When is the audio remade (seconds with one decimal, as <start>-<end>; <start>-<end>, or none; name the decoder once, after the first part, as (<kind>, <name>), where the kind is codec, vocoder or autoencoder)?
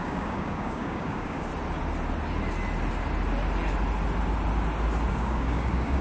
0.0-1.5 (codec, DAC); 5.1-6.0